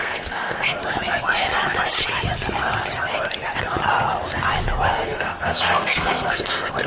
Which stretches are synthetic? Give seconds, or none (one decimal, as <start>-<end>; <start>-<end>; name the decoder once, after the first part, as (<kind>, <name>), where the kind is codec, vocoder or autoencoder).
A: 0.0-0.8 (codec, SNAC); 4.9-6.9